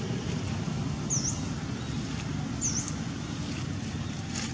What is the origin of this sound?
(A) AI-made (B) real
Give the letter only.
B